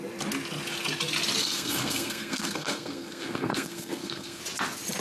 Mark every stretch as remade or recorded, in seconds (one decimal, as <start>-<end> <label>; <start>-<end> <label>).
0.0-1.4 recorded; 1.4-4.4 remade; 4.4-5.0 recorded